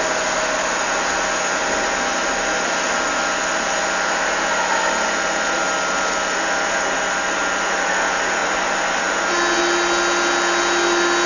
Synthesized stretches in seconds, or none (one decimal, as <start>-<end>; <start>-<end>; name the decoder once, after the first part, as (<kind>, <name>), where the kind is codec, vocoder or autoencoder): 8.4-9.0 (vocoder, Vocos)